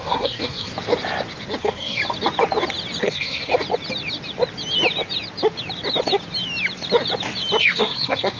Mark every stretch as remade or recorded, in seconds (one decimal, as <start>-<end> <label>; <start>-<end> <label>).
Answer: 0.0-0.7 remade; 0.7-1.6 recorded; 1.6-2.0 remade; 2.0-3.0 recorded; 3.0-3.5 remade; 3.5-7.6 recorded; 7.6-8.4 remade